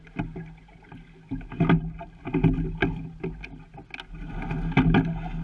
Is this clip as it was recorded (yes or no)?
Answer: yes